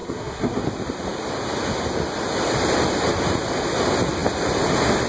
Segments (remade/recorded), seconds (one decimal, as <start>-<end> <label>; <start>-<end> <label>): 0.0-0.6 remade; 0.6-5.1 recorded